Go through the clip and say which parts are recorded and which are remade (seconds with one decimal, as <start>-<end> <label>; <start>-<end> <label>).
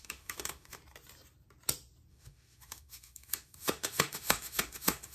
0.0-0.8 remade; 0.8-2.1 recorded; 2.1-5.1 remade